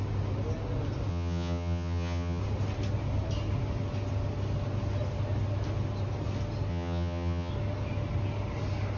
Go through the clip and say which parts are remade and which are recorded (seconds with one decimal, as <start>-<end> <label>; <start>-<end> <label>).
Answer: 0.0-1.1 recorded; 1.1-2.4 remade; 2.4-6.7 recorded; 6.7-7.5 remade; 7.5-9.0 recorded